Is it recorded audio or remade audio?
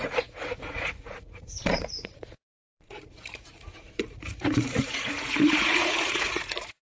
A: remade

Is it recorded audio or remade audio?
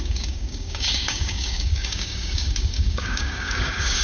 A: remade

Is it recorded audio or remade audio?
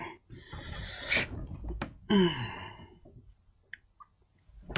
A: recorded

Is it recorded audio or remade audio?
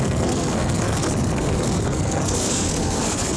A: remade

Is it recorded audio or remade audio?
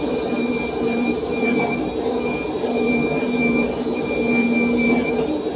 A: remade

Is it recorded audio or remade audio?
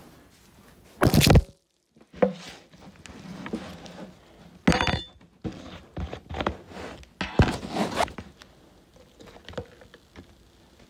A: recorded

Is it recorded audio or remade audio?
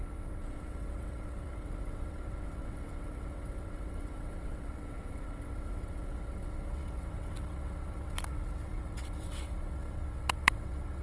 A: remade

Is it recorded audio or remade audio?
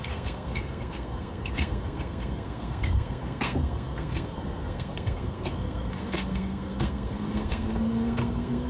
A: remade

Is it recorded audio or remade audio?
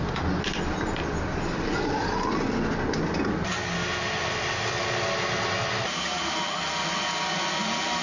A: recorded